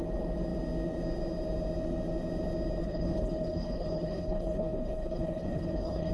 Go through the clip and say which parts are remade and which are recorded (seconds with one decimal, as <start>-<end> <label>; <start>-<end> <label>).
0.0-2.8 recorded; 2.8-6.1 remade